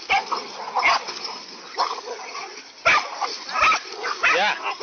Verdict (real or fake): real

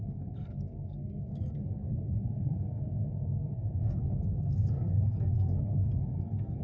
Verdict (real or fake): fake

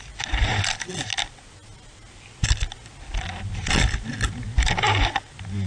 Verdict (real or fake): real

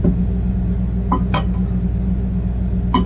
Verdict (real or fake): real